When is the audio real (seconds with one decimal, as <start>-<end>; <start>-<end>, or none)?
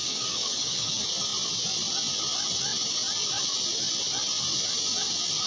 0.9-5.5